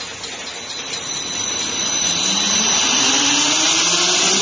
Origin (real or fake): real